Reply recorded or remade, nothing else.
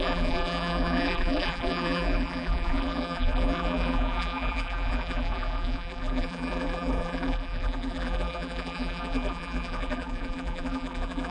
remade